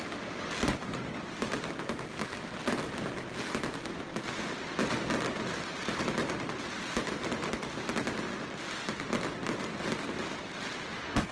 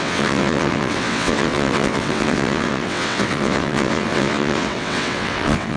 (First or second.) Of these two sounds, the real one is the first